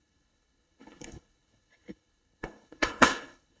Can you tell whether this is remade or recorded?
remade